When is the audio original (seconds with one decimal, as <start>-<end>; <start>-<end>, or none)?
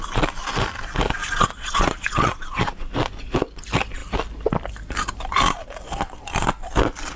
0.0-1.2; 2.9-7.2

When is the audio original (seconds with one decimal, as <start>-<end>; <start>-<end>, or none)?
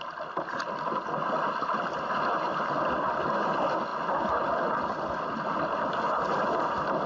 0.0-7.1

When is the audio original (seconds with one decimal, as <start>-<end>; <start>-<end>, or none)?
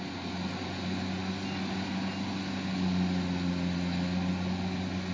0.0-5.1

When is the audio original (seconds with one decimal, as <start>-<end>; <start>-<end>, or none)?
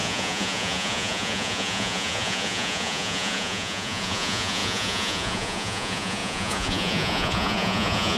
none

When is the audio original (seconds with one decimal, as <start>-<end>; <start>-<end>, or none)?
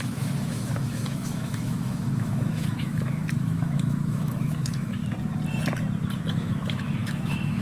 5.0-6.3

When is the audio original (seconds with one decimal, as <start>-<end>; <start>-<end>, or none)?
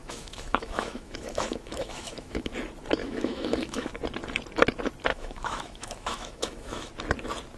2.5-3.0; 4.0-5.1; 6.9-7.6